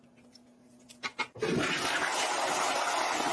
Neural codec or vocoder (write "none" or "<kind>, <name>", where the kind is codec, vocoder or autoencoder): none